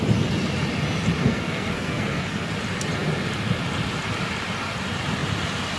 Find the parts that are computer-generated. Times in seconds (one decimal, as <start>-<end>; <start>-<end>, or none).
1.2-2.5